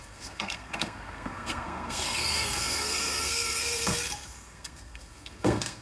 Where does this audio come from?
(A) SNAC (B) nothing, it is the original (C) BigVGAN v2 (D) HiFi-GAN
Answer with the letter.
A